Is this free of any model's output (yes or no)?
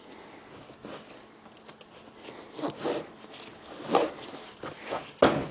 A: yes